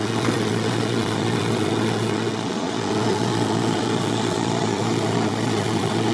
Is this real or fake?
fake